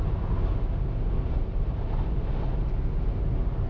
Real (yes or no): yes